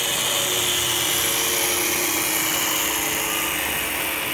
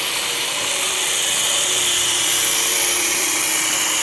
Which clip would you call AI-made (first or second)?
second